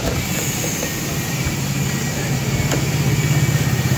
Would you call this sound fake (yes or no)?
no